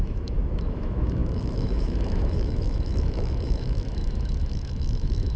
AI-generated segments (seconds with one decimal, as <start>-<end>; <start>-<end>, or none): 0.0-5.4